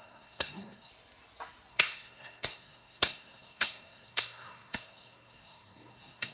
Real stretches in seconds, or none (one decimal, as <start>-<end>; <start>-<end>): 0.9-1.7